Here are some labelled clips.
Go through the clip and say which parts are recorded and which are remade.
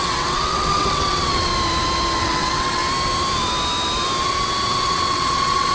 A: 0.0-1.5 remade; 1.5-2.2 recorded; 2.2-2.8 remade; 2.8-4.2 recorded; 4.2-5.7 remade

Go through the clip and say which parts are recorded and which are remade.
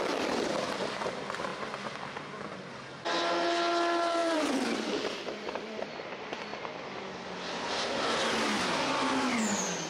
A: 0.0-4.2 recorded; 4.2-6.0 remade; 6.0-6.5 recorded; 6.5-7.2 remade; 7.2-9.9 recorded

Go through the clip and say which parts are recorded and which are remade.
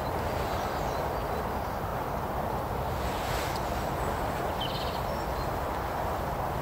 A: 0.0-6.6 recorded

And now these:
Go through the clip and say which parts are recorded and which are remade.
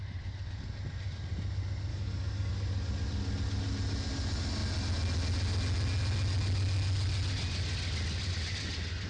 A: 0.0-1.9 recorded; 1.9-2.5 remade; 2.5-9.1 recorded